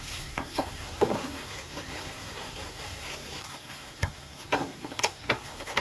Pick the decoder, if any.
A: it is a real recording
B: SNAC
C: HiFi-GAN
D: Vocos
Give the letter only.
B